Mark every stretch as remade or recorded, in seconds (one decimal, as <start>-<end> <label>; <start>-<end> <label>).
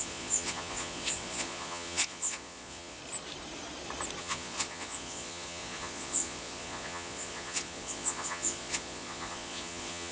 0.0-3.0 remade; 3.0-4.2 recorded; 4.2-10.1 remade